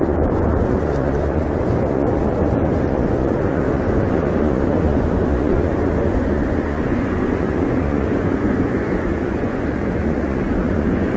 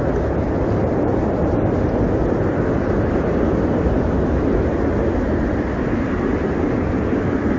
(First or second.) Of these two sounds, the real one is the second